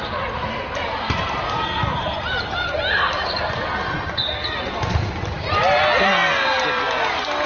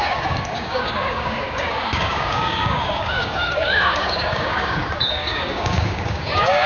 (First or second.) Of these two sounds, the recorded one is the first